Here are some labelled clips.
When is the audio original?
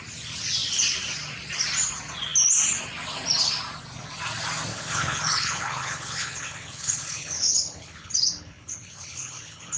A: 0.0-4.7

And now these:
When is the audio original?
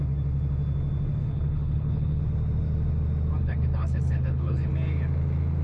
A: 0.0-1.2; 2.2-3.4; 4.7-5.6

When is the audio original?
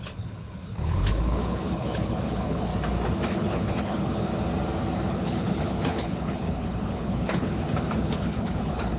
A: 2.7-3.3; 4.3-5.1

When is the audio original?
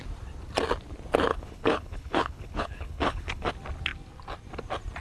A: 0.0-1.3; 3.5-5.0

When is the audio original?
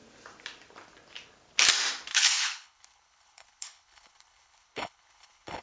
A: 0.0-2.1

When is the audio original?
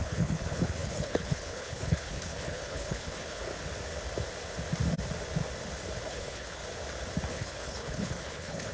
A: 3.5-6.1; 6.6-7.3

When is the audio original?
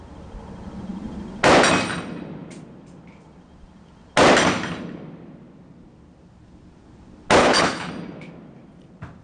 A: 0.0-7.4; 7.9-9.2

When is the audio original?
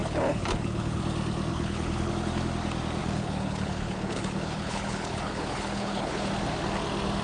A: 1.0-1.5; 2.1-3.0; 6.3-7.2